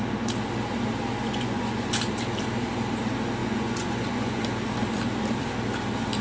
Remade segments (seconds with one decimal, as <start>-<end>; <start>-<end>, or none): 1.2-1.9; 3.4-4.4